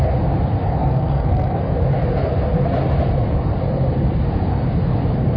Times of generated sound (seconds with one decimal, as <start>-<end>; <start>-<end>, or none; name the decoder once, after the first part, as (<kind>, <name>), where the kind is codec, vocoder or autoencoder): 0.8-1.6 (codec, SNAC)